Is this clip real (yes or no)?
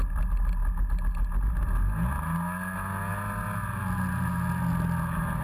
yes